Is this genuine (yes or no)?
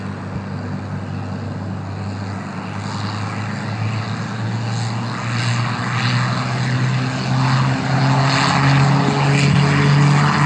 yes